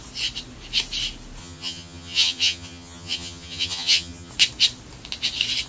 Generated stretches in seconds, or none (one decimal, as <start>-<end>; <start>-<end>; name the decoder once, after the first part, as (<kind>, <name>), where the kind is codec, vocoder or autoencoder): 1.4-4.3 (vocoder, HiFi-GAN)